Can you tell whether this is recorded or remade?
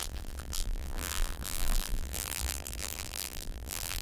remade